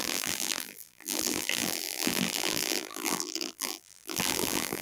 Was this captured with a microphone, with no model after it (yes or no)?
no